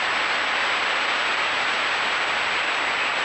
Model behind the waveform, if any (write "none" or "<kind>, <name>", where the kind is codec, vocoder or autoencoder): none